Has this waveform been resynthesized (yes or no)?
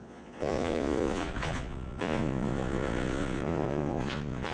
yes